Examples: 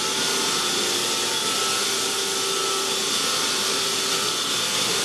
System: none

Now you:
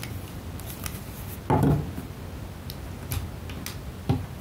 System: none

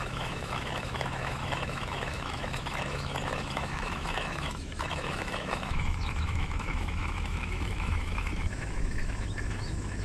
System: autoencoder, DAC-VAE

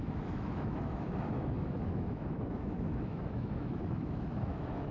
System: autoencoder, DAC-VAE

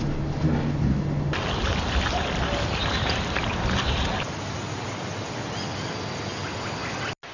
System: none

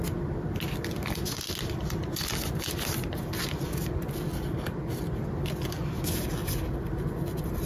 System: none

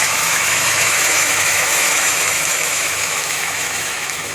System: autoencoder, DAC-VAE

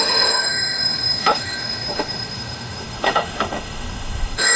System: autoencoder, DAC-VAE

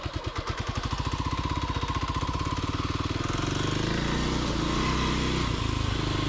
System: none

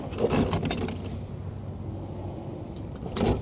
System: none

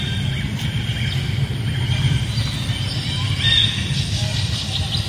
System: none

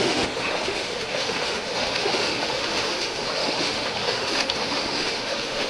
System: autoencoder, DAC-VAE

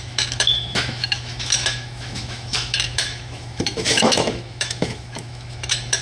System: autoencoder, DAC-VAE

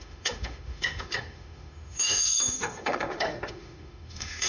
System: autoencoder, DAC-VAE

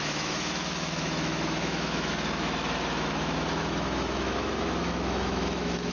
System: autoencoder, DAC-VAE